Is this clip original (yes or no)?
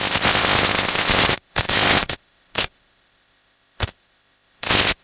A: no